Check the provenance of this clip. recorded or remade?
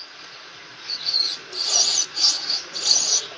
remade